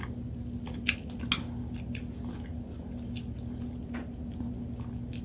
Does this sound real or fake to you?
real